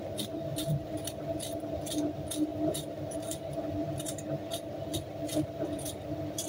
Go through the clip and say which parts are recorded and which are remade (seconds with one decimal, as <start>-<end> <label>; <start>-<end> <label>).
0.0-0.5 recorded; 0.5-1.7 remade; 1.7-2.5 recorded; 2.5-3.9 remade; 3.9-4.9 recorded; 4.9-6.5 remade